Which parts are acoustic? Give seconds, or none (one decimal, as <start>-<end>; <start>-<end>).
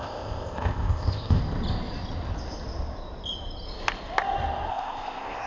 1.4-4.7